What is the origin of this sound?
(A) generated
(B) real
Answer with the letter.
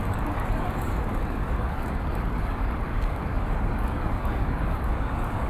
A